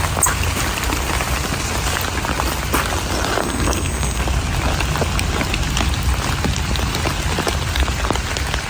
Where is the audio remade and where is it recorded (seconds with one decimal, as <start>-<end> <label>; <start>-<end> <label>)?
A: 0.0-3.4 recorded; 3.4-4.2 remade; 4.2-8.7 recorded